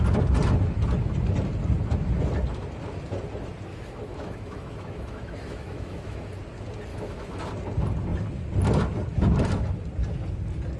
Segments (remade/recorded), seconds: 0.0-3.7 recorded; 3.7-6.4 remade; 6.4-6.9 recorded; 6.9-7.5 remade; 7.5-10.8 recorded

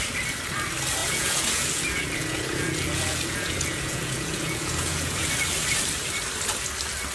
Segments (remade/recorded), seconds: 0.0-1.0 recorded; 1.0-5.3 remade; 5.3-7.1 recorded

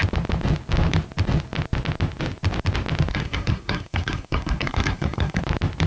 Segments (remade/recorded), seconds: 0.0-3.1 recorded; 3.1-5.4 remade; 5.4-5.9 recorded

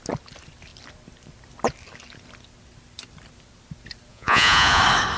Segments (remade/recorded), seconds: 0.0-4.1 recorded; 4.1-4.8 remade; 4.8-5.2 recorded

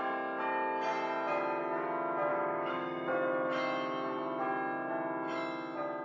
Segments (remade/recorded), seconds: 0.0-2.3 recorded; 2.3-3.1 remade; 3.1-6.0 recorded

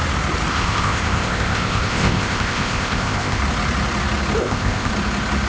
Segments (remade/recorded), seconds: 0.0-0.5 recorded; 0.5-3.4 remade; 3.4-4.4 recorded; 4.4-4.9 remade; 4.9-5.5 recorded

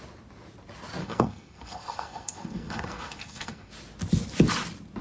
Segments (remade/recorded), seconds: 0.0-1.0 recorded; 1.0-3.7 remade; 3.7-5.0 recorded